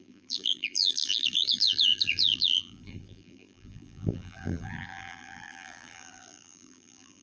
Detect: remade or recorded remade